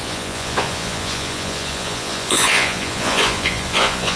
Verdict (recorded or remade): remade